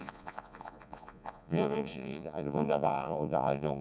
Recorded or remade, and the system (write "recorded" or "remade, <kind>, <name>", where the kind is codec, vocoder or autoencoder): remade, vocoder, Vocos